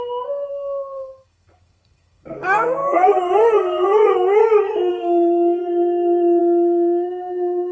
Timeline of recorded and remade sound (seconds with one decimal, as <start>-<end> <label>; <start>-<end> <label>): 0.0-4.4 remade; 4.4-4.9 recorded; 4.9-5.6 remade; 5.6-6.4 recorded; 6.4-7.7 remade